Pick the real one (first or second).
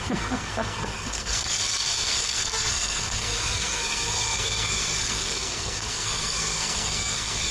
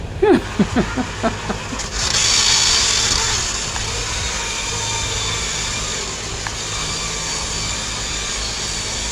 second